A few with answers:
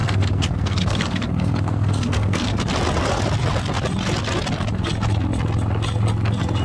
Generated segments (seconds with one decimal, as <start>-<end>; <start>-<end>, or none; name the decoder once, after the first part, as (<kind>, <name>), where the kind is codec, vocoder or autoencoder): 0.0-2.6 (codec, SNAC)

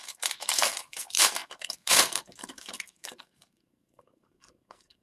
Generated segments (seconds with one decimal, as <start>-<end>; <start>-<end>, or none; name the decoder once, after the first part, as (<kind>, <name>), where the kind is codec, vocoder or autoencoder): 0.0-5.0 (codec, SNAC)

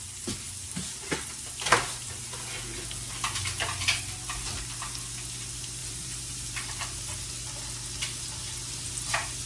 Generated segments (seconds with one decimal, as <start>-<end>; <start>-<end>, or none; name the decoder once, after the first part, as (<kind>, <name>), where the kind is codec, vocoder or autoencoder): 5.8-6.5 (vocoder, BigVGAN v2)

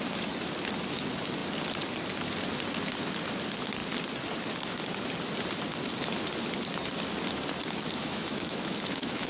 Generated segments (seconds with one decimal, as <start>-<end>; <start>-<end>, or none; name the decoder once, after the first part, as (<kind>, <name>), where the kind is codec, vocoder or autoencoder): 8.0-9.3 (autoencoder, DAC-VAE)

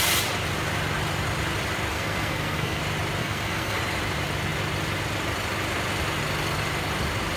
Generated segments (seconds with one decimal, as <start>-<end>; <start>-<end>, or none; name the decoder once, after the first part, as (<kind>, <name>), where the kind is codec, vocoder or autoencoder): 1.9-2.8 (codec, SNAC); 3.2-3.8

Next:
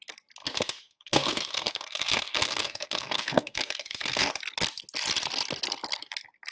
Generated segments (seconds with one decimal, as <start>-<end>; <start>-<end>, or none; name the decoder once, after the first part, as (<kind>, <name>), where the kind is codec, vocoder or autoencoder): 0.4-4.3 (codec, SNAC)